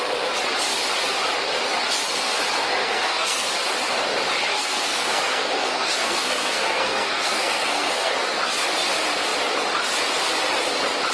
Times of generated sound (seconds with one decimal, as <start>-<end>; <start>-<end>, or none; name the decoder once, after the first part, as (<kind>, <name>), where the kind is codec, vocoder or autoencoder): 2.8-3.5 (codec, SNAC); 4.5-8.1